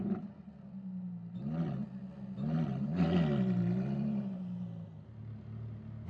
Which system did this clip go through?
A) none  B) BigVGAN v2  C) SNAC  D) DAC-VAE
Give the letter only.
A